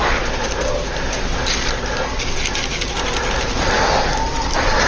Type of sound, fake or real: real